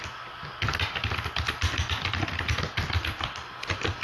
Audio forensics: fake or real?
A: real